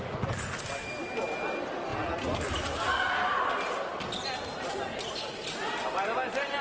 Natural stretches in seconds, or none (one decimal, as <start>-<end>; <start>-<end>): 0.0-6.6